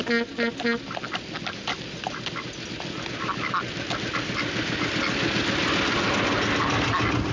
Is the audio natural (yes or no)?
yes